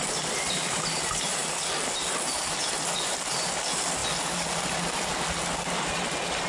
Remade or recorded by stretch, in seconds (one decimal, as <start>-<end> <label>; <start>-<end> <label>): 0.0-1.4 remade; 1.4-2.6 recorded; 2.6-4.0 remade; 4.0-6.5 recorded